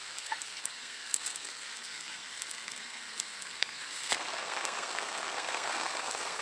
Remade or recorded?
remade